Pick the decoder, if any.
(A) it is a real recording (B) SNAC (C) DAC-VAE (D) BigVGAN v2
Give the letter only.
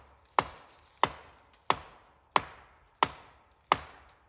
A